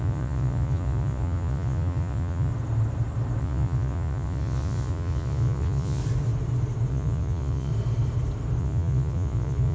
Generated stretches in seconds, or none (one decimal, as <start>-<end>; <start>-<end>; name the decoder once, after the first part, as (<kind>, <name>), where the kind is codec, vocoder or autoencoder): 0.0-2.5 (vocoder, Vocos); 3.4-6.0; 6.9-7.7; 8.6-9.7